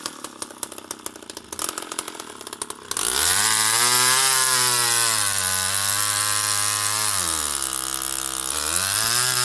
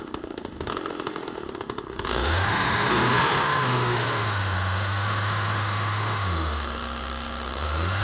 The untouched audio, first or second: first